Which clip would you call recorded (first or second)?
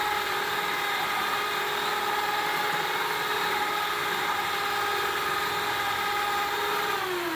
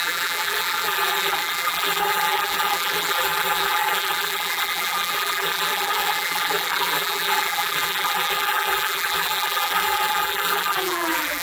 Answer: first